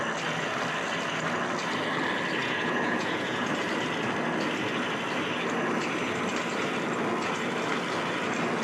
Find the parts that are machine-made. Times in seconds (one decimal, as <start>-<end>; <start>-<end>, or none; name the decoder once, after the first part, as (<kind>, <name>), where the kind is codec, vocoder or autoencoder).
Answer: 2.4-3.5 (vocoder, Vocos)